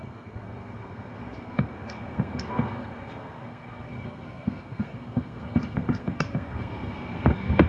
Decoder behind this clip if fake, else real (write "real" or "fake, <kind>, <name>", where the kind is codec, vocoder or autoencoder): fake, codec, SNAC